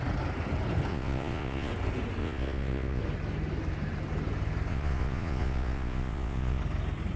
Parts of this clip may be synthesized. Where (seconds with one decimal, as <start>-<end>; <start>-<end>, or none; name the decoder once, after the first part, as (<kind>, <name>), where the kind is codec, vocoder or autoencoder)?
0.9-1.7 (vocoder, Vocos); 2.2-3.0; 4.7-6.6